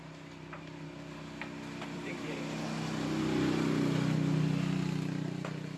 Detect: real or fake real